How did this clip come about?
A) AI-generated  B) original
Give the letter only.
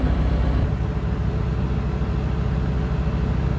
B